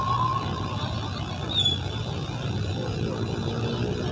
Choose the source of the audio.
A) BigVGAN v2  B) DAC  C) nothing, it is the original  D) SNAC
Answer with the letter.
C